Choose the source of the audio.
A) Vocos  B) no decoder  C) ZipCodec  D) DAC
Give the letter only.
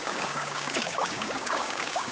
D